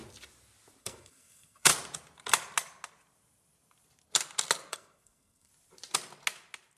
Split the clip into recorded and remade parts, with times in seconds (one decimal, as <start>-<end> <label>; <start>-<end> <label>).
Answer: 0.0-0.8 recorded; 0.8-1.7 remade; 1.7-4.7 recorded; 4.7-5.5 remade; 5.5-6.8 recorded